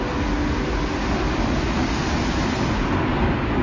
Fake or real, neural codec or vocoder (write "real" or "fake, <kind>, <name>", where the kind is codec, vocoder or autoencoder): real